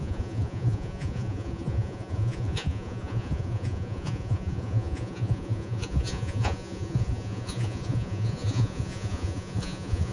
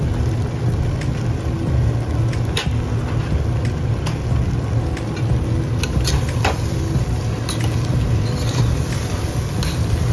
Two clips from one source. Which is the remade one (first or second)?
first